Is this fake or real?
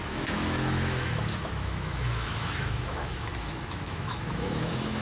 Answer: fake